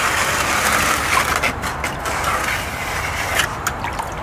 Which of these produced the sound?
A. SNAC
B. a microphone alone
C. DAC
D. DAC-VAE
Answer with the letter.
B